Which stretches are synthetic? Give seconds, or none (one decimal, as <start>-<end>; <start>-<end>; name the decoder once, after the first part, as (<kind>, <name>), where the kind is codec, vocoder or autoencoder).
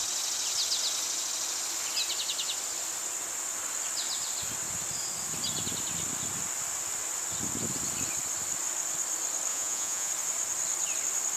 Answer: 9.5-10.1 (vocoder, Vocos)